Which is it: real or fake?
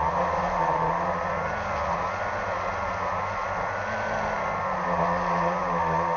real